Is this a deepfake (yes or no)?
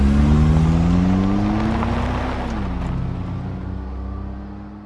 no